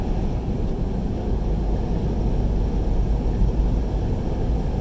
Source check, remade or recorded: recorded